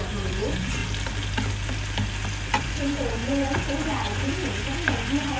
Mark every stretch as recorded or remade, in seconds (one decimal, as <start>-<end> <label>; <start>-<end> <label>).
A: 0.0-0.8 remade; 0.8-2.6 recorded; 2.6-5.4 remade